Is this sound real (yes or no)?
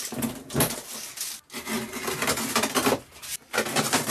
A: yes